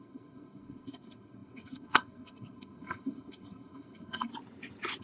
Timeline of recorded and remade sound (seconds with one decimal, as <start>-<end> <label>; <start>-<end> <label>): 0.0-4.3 remade; 4.3-5.0 recorded